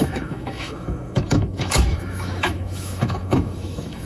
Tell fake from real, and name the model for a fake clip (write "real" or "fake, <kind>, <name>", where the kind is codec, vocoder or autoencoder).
fake, autoencoder, DAC-VAE